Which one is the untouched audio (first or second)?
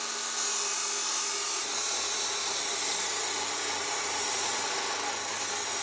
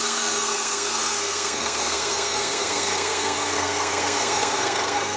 first